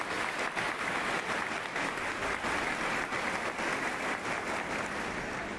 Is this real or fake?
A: real